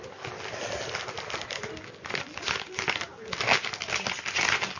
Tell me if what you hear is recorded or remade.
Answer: recorded